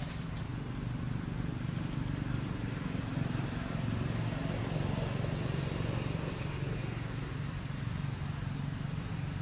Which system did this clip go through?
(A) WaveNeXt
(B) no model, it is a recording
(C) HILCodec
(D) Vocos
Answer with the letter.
B